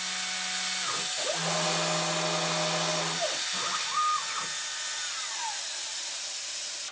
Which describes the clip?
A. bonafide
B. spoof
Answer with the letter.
A